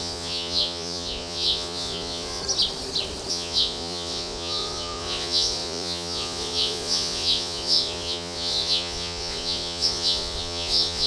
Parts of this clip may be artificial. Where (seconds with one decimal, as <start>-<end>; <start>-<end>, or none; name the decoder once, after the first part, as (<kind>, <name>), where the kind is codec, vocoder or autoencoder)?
0.0-2.4 (vocoder, Vocos); 3.3-11.1